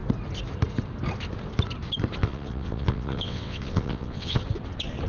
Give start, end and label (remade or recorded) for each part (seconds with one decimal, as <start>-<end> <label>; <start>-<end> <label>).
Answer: 0.0-2.2 recorded; 2.2-4.4 remade; 4.4-5.1 recorded